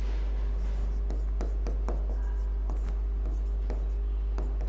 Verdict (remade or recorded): recorded